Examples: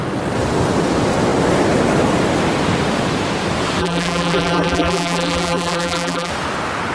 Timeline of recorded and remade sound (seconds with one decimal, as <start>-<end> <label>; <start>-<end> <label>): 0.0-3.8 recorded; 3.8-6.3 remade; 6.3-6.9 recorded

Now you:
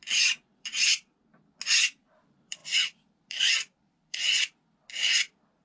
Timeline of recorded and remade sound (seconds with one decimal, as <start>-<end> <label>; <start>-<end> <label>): 0.0-1.2 remade; 1.2-2.0 recorded; 2.0-2.6 remade; 2.6-3.3 recorded; 3.3-4.3 remade; 4.3-4.9 recorded; 4.9-5.6 remade

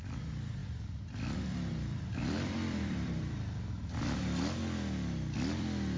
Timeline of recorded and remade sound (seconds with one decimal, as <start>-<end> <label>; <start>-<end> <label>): 0.0-0.6 recorded; 0.6-4.2 remade; 4.2-6.0 recorded

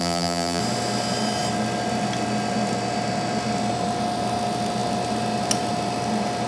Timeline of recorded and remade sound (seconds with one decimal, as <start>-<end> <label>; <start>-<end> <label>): 0.0-0.6 remade; 0.6-6.5 recorded

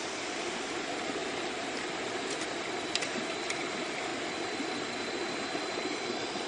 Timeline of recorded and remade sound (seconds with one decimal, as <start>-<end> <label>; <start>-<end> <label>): 0.0-6.5 recorded